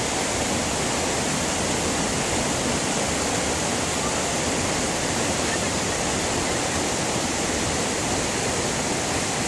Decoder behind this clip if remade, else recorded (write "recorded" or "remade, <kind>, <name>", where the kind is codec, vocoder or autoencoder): recorded